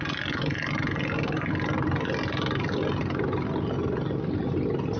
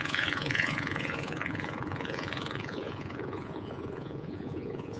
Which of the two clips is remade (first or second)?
second